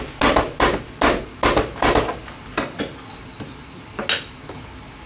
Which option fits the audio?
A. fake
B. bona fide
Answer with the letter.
B